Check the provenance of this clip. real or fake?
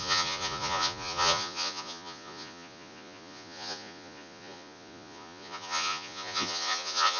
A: fake